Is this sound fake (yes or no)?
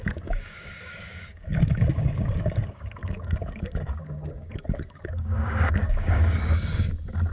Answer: yes